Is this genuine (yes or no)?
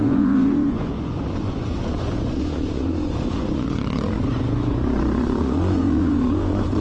no